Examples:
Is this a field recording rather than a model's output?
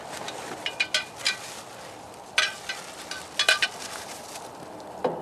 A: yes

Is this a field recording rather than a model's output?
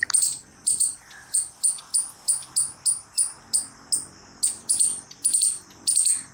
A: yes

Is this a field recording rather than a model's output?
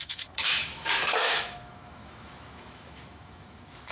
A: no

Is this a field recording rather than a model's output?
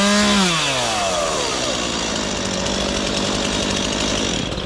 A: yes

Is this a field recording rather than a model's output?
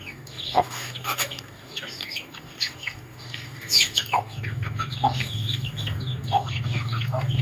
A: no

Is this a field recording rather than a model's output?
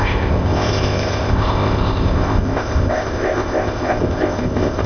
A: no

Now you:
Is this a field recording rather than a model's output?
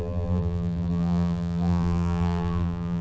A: no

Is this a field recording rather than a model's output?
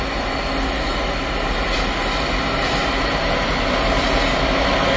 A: yes